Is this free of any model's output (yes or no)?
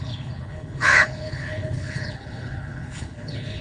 no